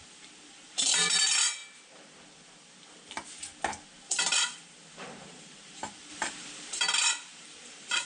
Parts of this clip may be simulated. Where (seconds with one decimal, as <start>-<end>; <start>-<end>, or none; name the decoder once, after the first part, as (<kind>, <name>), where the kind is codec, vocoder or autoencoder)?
0.0-1.6 (vocoder, BigVGAN v2); 4.0-8.1